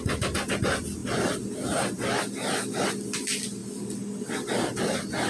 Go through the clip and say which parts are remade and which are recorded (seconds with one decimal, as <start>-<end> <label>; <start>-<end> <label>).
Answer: 0.0-1.0 recorded; 1.0-1.8 remade; 1.8-5.3 recorded